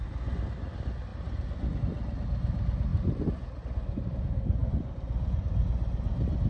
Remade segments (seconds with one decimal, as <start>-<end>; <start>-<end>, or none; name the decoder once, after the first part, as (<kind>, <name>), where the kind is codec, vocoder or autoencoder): 2.9-3.5 (vocoder, BigVGAN v2); 4.6-5.6